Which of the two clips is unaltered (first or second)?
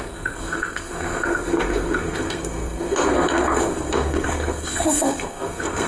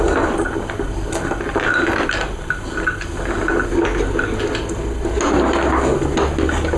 second